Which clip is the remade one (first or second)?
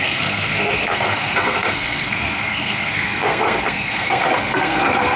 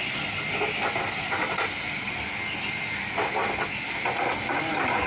first